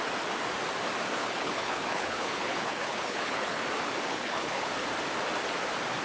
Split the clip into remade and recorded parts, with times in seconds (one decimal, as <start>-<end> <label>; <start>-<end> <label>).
0.0-1.2 recorded; 1.2-3.6 remade; 3.6-4.1 recorded; 4.1-4.7 remade; 4.7-6.0 recorded